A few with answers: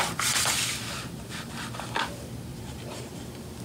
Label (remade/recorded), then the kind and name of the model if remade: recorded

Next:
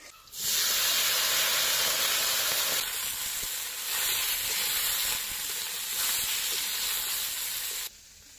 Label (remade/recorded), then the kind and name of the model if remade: recorded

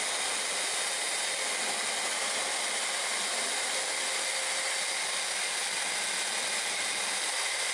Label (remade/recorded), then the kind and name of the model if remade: recorded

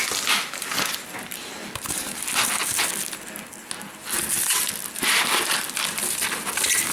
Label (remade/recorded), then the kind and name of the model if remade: recorded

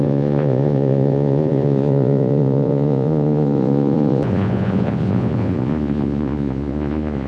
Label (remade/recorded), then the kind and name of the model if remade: remade, vocoder, Vocos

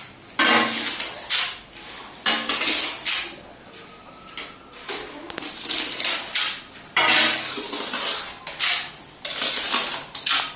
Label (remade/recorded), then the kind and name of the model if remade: recorded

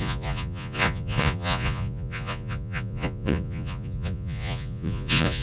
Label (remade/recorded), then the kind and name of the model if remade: remade, vocoder, Vocos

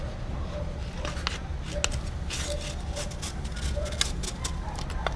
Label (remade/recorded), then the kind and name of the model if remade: recorded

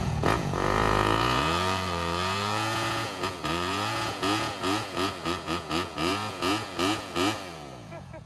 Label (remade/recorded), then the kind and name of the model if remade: remade, vocoder, Vocos